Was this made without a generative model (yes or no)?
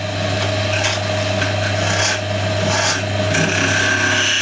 yes